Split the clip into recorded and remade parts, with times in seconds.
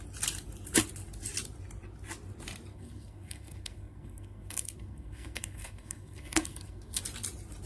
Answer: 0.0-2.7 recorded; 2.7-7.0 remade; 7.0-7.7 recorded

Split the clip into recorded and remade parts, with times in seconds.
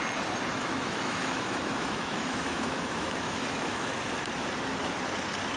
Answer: 0.0-0.5 recorded; 0.5-3.9 remade; 3.9-5.6 recorded